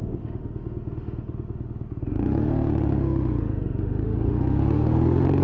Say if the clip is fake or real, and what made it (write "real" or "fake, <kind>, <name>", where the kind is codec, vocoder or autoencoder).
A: fake, autoencoder, DAC-VAE